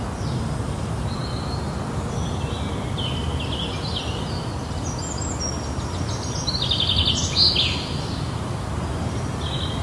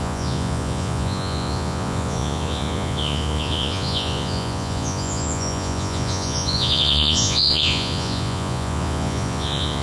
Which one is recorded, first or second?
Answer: first